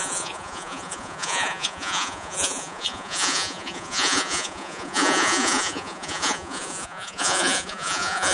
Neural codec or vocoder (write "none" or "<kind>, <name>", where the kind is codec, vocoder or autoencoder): vocoder, Vocos